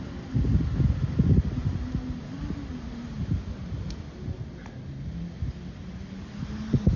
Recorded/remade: recorded